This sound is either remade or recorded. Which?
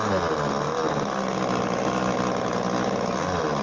recorded